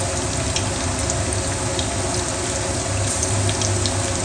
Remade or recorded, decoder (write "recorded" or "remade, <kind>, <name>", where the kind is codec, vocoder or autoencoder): recorded